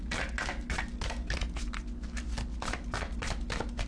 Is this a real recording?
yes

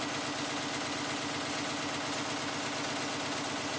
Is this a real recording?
yes